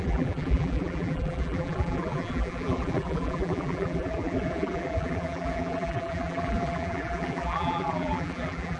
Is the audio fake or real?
fake